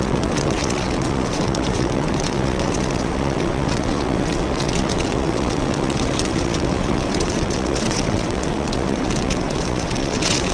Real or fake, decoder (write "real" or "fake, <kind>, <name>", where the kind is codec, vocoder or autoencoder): fake, vocoder, WaveNeXt